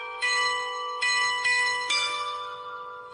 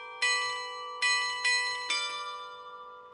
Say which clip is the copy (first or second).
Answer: first